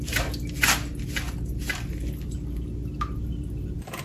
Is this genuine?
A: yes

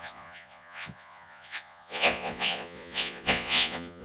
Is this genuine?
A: no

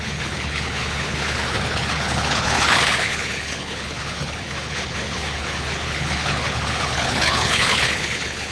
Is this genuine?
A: no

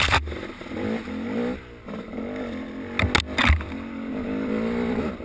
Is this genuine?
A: yes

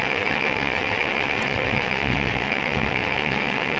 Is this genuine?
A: no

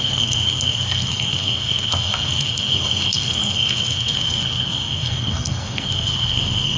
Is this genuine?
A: no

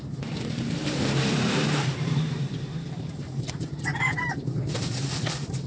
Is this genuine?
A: no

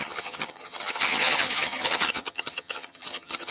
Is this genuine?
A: no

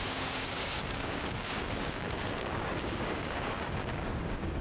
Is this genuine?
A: no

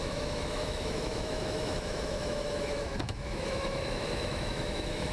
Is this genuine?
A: no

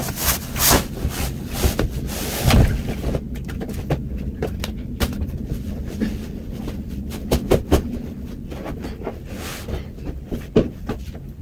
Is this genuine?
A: yes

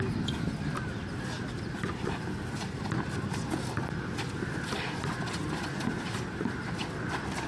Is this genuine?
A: yes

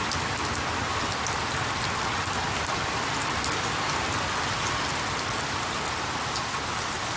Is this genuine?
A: yes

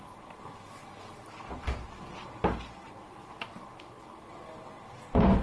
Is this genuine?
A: yes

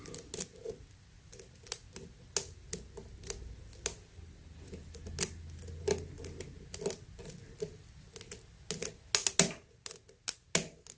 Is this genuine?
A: yes